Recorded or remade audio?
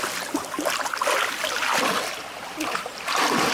recorded